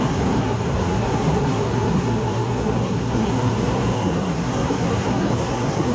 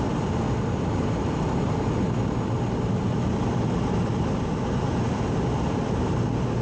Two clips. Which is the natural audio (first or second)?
second